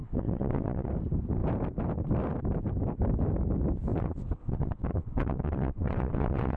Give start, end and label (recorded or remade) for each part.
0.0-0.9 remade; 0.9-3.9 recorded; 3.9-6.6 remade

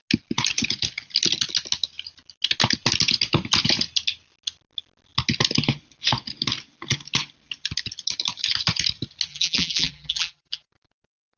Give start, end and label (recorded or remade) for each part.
0.0-9.3 recorded; 9.3-10.7 remade; 10.7-11.4 recorded

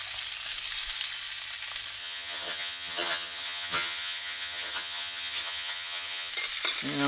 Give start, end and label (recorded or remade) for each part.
0.0-2.0 recorded; 2.0-6.3 remade; 6.3-7.1 recorded

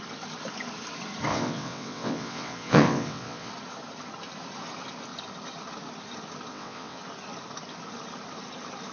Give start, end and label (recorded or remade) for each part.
0.0-1.3 recorded; 1.3-3.5 remade; 3.5-6.5 recorded; 6.5-7.0 remade; 7.0-8.9 recorded

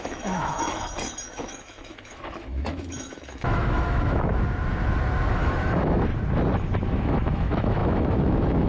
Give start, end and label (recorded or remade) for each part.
0.0-4.3 remade; 4.3-5.3 recorded; 5.3-6.1 remade; 6.1-7.0 recorded; 7.0-8.7 remade

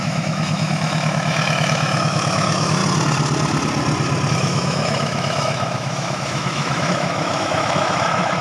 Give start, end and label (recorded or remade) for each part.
0.0-2.8 remade; 2.8-4.3 recorded; 4.3-8.4 remade

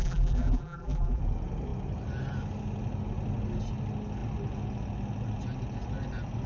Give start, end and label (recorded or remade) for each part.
0.0-1.2 remade; 1.2-6.5 recorded